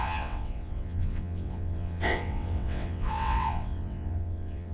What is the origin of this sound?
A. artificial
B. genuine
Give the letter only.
A